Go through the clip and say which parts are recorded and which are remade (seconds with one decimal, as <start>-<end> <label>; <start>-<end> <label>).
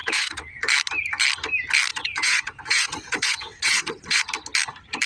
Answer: 0.0-0.6 remade; 0.6-1.9 recorded; 1.9-4.2 remade; 4.2-5.1 recorded